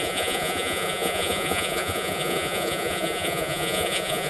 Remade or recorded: remade